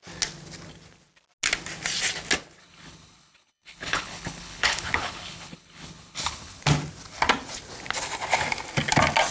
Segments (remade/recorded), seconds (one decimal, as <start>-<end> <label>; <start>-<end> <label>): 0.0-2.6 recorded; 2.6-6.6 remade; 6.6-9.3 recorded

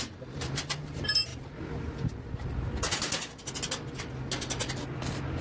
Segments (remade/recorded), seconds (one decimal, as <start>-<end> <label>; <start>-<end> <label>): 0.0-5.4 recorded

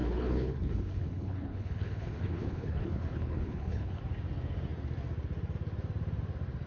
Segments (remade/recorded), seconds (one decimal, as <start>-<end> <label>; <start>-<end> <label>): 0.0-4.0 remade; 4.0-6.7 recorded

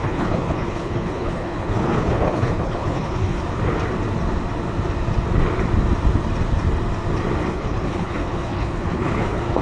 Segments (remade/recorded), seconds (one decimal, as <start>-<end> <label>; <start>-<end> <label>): 0.0-3.4 remade; 3.4-7.5 recorded; 7.5-9.6 remade

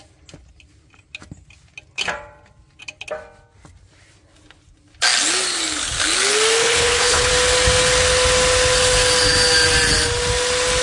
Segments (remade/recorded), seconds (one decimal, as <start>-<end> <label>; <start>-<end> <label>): 0.0-6.6 recorded; 6.6-7.3 remade; 7.3-10.8 recorded